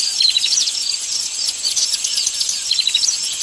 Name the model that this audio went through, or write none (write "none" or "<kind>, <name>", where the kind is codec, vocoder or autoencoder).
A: vocoder, Vocos